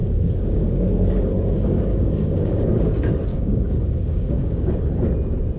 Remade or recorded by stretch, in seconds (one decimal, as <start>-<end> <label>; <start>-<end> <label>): 0.0-2.9 remade; 2.9-3.3 recorded; 3.3-4.7 remade; 4.7-5.6 recorded